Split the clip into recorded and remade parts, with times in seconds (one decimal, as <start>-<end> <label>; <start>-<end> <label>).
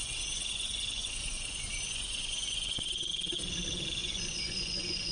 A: 0.0-3.1 remade; 3.1-4.0 recorded; 4.0-5.1 remade